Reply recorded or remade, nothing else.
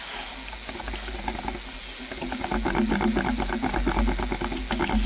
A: recorded